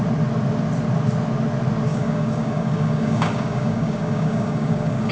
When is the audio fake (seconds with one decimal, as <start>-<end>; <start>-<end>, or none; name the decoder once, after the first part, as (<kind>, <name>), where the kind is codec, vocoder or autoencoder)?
1.9-5.1 (codec, DAC)